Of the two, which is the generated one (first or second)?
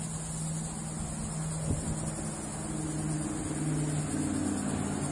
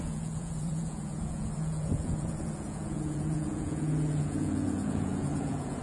second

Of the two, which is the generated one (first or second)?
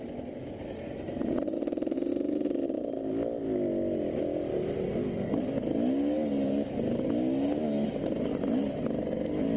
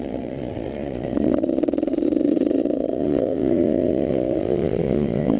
second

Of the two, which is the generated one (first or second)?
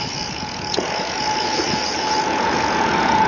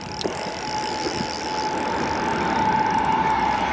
first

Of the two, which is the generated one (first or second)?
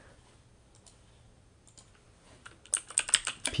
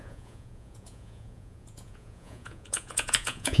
second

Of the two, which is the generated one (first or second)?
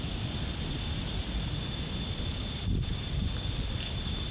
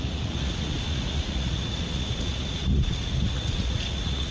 second